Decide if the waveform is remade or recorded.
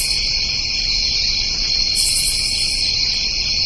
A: recorded